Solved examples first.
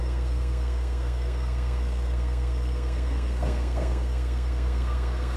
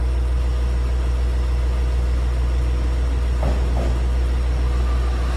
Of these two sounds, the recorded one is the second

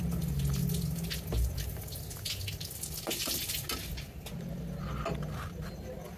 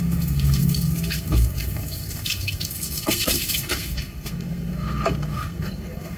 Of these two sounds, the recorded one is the first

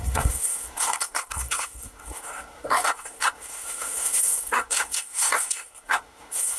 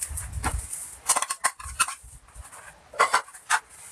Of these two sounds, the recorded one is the second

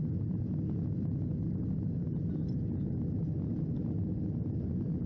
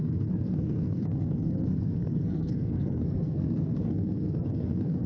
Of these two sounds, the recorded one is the first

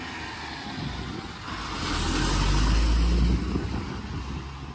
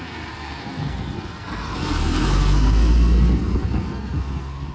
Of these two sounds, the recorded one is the first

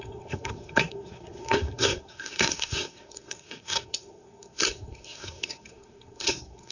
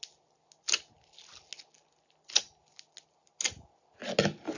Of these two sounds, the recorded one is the second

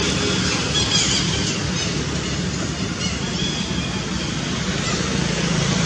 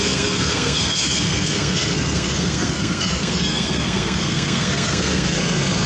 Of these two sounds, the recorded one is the first